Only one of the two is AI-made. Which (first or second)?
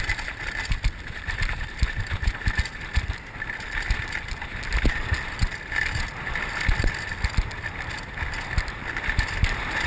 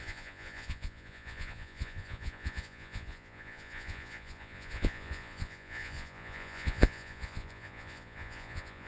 second